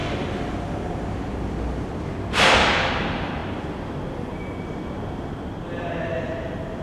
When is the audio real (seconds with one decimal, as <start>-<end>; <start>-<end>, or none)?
0.0-6.8